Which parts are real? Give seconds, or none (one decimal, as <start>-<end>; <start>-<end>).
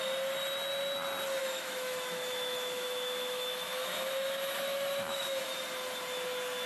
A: 0.0-1.4; 5.4-6.7